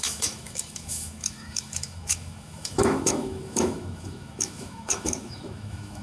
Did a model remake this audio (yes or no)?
yes